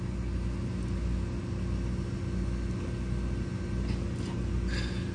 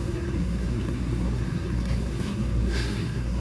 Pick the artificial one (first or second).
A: second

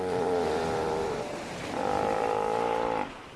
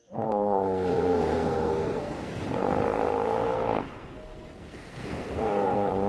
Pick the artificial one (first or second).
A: second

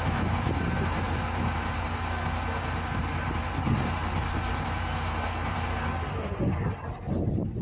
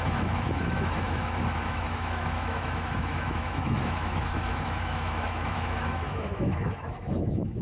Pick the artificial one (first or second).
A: second